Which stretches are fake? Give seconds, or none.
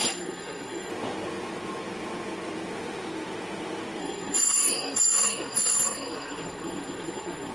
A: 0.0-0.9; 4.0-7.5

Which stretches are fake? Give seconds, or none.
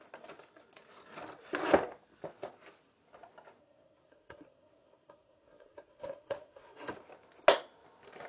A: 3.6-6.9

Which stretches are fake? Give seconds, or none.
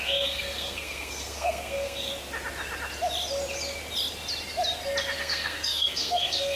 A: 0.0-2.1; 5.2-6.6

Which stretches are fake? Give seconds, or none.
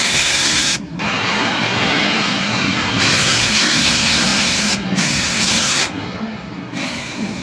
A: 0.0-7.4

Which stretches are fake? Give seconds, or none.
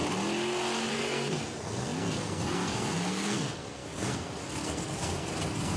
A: 0.9-5.8